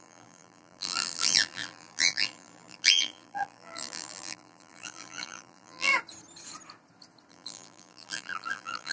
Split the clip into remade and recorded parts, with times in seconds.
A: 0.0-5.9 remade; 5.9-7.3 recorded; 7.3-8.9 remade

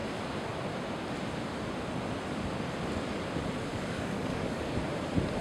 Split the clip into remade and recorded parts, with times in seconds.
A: 0.0-3.7 recorded; 3.7-4.8 remade; 4.8-5.4 recorded